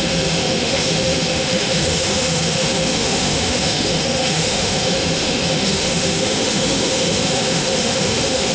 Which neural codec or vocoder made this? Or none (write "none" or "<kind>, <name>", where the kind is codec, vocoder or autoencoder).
autoencoder, DAC-VAE